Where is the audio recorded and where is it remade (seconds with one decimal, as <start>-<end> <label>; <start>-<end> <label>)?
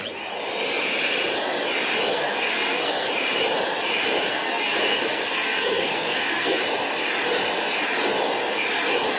0.0-2.1 recorded; 2.1-3.1 remade; 3.1-4.3 recorded; 4.3-6.6 remade; 6.6-9.2 recorded